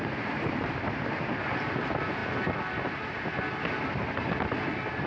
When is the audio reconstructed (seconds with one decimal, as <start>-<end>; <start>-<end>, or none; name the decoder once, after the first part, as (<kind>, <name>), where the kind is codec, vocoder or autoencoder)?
none